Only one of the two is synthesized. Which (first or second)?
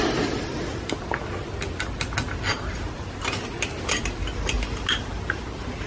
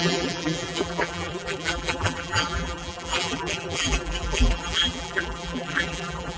second